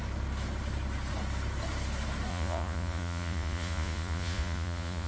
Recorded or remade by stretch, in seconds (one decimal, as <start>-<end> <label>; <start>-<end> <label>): 0.0-2.3 recorded; 2.3-5.1 remade